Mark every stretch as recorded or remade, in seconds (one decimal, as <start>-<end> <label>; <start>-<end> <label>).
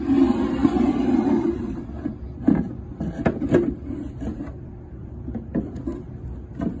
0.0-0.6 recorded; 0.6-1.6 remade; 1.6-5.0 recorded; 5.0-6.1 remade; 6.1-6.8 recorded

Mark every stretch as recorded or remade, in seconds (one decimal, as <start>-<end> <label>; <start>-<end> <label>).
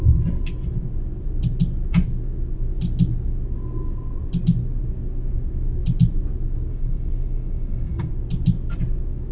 0.0-6.7 recorded; 6.7-8.1 remade; 8.1-9.3 recorded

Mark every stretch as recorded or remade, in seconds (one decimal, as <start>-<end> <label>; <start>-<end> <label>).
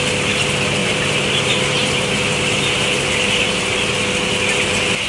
0.0-0.8 recorded; 0.8-3.8 remade; 3.8-5.1 recorded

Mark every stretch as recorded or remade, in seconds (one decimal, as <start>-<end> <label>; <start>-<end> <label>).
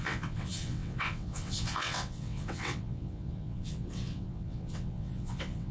0.0-5.7 remade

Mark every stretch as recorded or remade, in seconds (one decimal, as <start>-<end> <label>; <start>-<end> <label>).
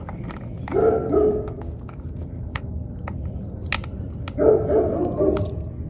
0.0-0.8 recorded; 0.8-2.6 remade; 2.6-5.9 recorded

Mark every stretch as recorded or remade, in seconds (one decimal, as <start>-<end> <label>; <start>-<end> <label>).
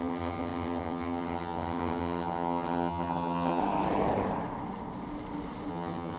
0.0-3.6 remade; 3.6-5.7 recorded; 5.7-6.2 remade